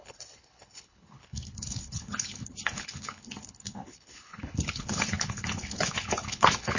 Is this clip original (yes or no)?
no